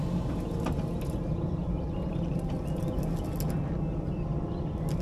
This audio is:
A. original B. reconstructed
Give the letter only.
A